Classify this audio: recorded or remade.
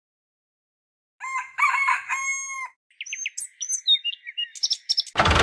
recorded